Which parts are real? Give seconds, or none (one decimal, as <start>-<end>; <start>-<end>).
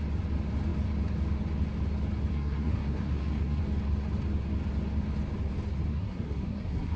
0.0-2.3; 3.6-5.9